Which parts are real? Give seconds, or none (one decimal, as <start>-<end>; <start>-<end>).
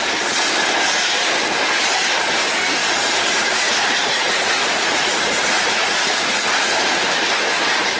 0.0-2.8; 6.7-8.0